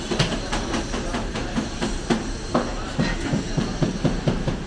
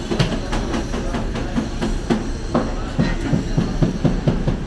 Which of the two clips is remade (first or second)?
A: first